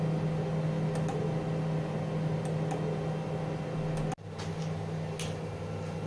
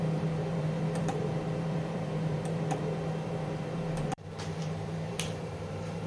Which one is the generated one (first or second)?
second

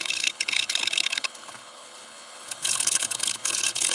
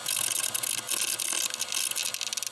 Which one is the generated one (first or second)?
first